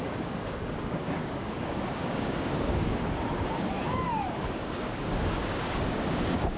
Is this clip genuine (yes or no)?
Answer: no